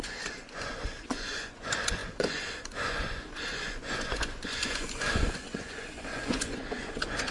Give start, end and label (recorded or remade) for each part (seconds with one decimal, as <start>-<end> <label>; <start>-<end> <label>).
0.0-7.3 remade